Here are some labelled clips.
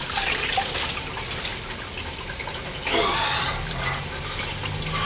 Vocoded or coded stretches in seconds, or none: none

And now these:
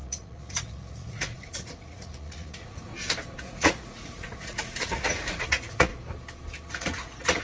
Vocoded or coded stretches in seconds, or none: 0.0-2.9 (vocoder, Vocos); 3.4-5.9; 6.7-7.4

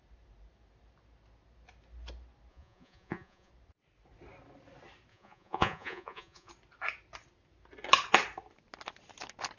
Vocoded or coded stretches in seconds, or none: 2.5-3.5 (vocoder, Vocos); 5.1-6.5

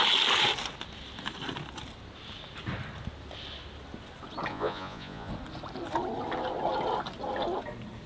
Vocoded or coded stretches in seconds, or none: 4.5-5.3 (vocoder, Vocos)

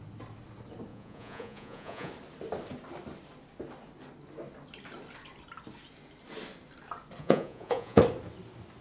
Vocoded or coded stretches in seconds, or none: 0.9-2.1 (vocoder, Vocos); 7.2-8.0

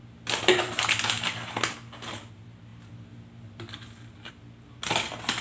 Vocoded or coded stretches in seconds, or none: none

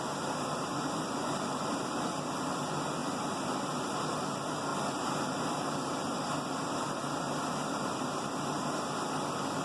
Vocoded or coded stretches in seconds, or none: 0.7-1.3 (vocoder, Vocos)